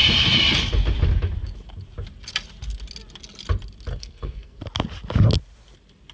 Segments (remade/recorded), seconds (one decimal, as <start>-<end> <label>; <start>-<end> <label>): 0.0-3.9 recorded; 3.9-4.6 remade; 4.6-6.1 recorded